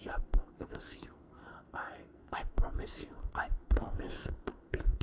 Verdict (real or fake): fake